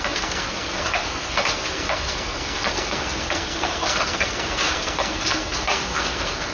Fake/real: fake